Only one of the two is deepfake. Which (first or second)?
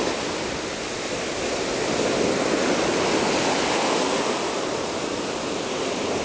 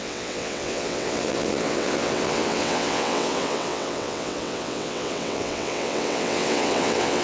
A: second